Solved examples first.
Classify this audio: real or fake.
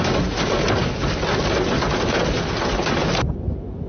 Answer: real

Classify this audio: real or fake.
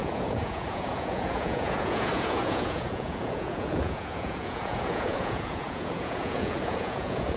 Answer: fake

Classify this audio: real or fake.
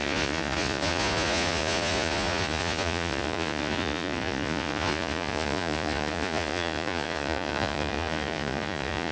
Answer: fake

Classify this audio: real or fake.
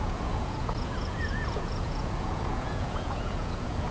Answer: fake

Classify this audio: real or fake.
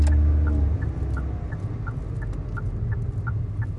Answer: real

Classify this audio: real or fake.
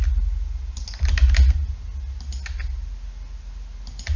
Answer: real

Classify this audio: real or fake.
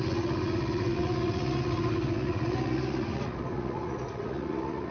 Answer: fake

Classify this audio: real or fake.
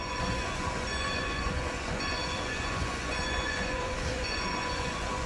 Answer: fake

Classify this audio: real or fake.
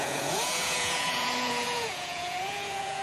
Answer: fake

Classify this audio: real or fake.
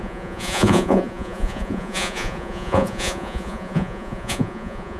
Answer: fake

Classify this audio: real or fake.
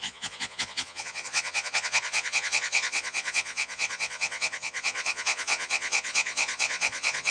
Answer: fake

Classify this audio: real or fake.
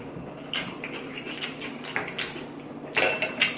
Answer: real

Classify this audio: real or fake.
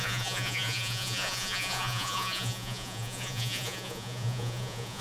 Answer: fake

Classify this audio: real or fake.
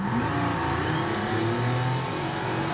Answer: real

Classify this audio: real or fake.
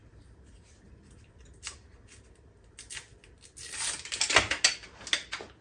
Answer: real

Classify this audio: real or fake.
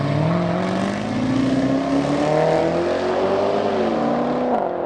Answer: real